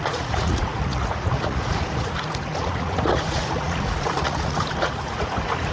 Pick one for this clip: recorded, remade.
remade